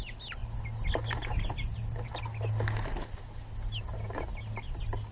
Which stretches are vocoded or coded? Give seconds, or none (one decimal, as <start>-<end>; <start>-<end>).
none